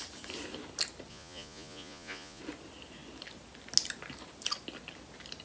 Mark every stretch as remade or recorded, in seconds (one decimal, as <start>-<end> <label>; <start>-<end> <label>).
0.0-1.1 recorded; 1.1-2.4 remade; 2.4-5.4 recorded